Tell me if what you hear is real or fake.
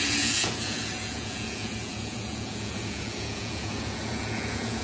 fake